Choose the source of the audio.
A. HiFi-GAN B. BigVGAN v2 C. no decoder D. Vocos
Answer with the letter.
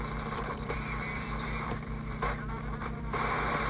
B